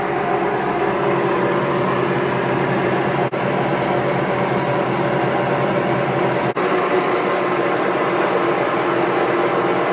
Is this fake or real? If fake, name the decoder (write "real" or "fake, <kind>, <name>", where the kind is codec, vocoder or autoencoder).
real